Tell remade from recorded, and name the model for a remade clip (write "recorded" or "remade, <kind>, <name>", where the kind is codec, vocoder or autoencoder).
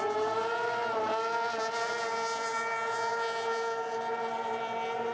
recorded